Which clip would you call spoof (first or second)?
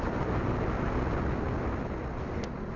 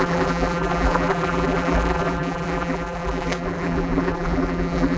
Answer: second